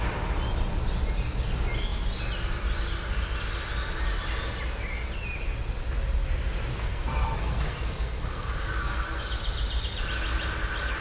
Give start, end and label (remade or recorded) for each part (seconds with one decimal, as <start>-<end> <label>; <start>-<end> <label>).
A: 0.0-6.7 recorded; 6.7-9.2 remade; 9.2-11.0 recorded